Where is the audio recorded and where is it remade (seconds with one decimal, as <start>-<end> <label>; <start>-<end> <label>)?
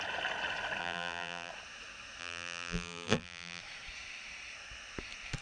0.0-0.8 recorded; 0.8-1.5 remade; 1.5-2.2 recorded; 2.2-3.6 remade; 3.6-5.4 recorded